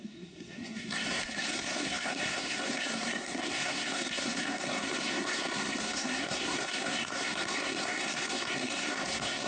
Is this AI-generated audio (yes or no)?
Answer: yes